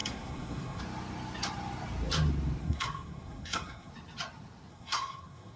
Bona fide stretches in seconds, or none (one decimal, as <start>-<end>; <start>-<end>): 0.8-2.6; 3.9-4.7